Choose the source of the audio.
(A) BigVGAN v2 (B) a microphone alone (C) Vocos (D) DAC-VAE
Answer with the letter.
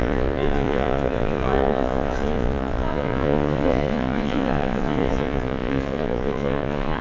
C